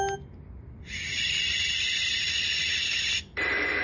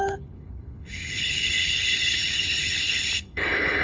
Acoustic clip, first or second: first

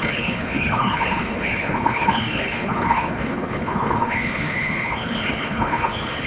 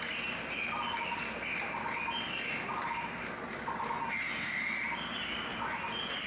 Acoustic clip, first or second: second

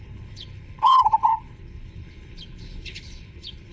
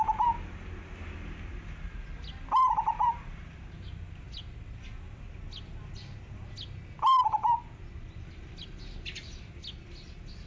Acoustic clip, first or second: second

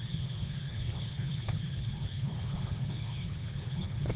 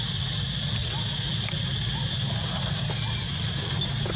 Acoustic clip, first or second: second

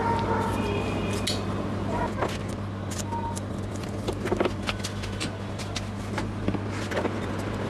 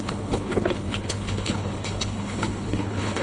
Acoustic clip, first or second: first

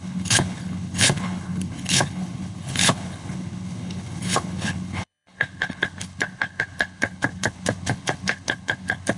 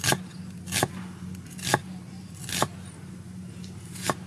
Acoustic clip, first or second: second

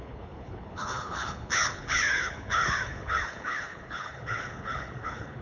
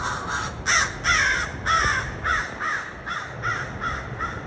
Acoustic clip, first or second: second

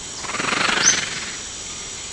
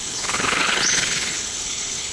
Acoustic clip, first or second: first